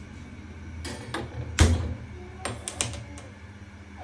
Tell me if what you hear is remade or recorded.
recorded